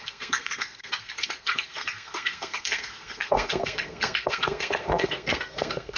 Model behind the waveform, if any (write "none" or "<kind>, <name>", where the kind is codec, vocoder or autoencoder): codec, SNAC